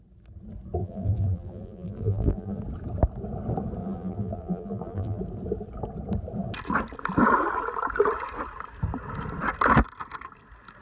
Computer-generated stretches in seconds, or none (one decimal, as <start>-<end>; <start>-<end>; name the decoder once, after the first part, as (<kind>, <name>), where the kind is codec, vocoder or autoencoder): 0.8-2.6 (vocoder, BigVGAN v2); 3.8-5.2